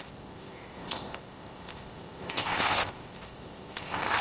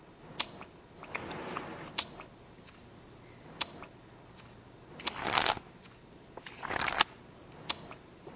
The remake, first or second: first